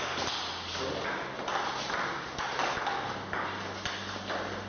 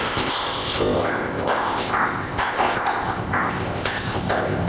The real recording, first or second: first